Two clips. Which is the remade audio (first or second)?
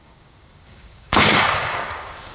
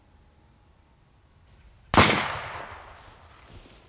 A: first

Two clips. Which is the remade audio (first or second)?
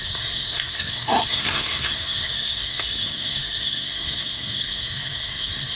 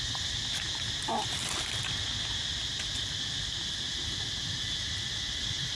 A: first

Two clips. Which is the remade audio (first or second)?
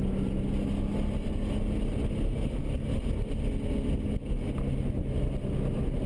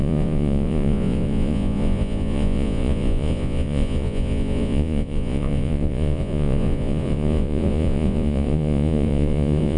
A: second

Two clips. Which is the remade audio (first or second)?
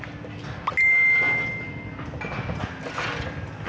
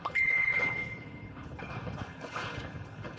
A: second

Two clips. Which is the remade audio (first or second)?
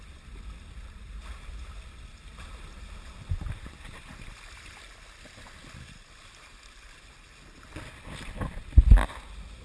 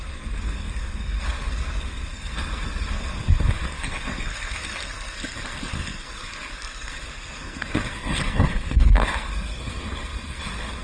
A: second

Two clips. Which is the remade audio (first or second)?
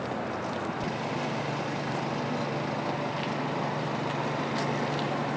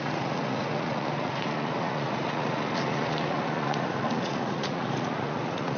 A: second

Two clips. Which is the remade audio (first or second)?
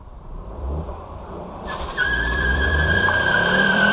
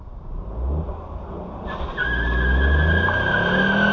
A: first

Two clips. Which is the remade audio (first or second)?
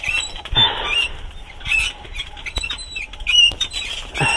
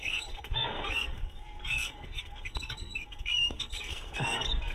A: second